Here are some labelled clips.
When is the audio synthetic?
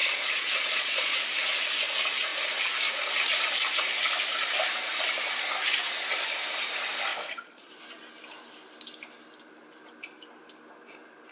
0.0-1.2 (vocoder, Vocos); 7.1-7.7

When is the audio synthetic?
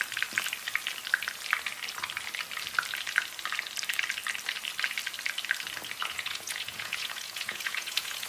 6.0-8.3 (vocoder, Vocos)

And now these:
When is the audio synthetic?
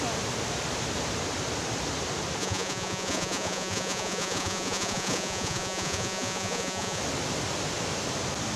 2.4-7.0 (vocoder, Vocos)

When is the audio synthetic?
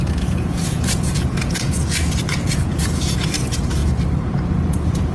0.0-3.8 (vocoder, Vocos); 4.5-5.1